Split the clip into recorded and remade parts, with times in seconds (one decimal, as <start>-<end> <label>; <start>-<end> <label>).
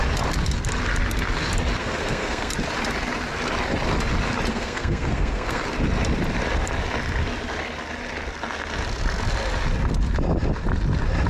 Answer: 0.0-1.8 recorded; 1.8-2.5 remade; 2.5-4.5 recorded; 4.5-5.6 remade; 5.6-11.3 recorded